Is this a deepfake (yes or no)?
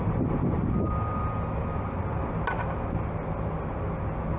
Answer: no